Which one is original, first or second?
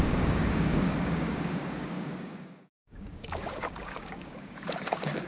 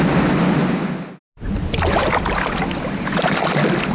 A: second